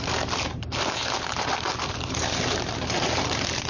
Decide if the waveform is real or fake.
fake